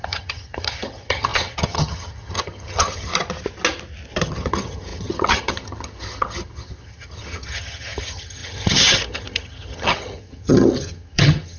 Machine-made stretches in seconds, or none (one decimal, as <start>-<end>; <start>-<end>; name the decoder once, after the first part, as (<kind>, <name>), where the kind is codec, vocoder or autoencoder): 0.0-3.1 (vocoder, HiFi-GAN); 4.2-11.6